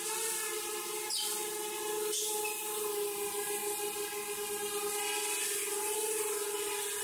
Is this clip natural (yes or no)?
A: yes